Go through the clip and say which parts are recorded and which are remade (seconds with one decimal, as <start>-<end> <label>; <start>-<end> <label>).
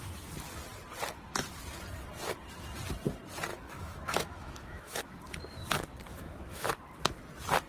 0.0-3.5 recorded; 3.5-5.0 remade; 5.0-6.1 recorded; 6.1-6.7 remade; 6.7-7.7 recorded